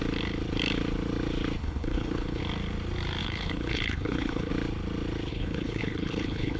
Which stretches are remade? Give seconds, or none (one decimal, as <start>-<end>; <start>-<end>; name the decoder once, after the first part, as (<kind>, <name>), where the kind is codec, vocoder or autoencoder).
1.6-2.4 (codec, HILCodec); 3.2-4.5; 5.3-6.6